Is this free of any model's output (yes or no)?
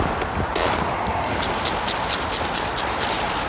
yes